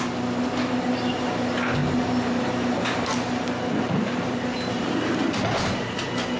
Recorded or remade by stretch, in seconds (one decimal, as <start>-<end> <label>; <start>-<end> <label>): 0.0-6.4 recorded